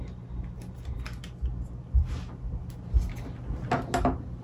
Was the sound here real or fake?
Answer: real